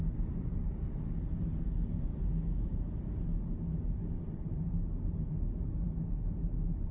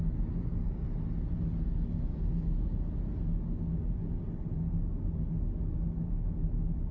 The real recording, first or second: second